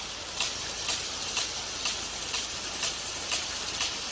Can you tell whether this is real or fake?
real